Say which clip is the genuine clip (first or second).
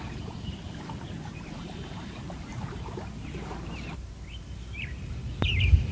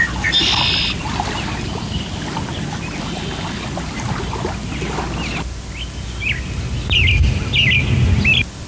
second